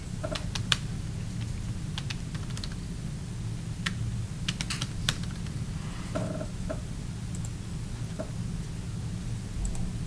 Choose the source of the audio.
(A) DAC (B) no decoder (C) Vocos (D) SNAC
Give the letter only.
B